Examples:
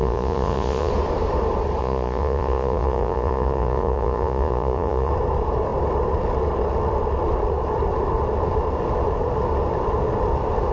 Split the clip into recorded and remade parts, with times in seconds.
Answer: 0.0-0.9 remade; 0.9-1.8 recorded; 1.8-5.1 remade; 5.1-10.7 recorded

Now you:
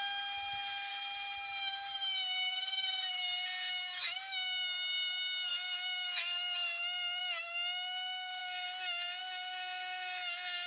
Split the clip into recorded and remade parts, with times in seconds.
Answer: 0.0-10.7 remade

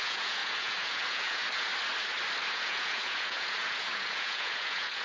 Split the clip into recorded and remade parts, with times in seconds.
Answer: 0.0-1.7 remade; 1.7-2.5 recorded; 2.5-5.0 remade

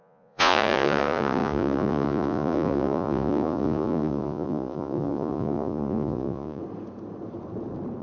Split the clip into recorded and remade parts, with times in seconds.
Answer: 0.0-6.6 remade; 6.6-8.0 recorded